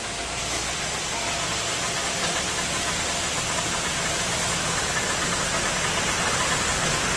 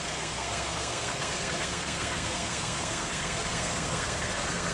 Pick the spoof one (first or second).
second